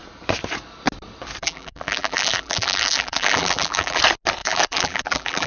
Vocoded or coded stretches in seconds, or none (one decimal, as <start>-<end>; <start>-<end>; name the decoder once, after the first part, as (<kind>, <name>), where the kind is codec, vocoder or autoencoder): 1.4-4.0 (vocoder, BigVGAN v2); 4.4-5.5